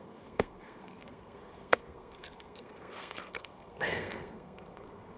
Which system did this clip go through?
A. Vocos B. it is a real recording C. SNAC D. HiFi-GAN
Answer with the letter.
C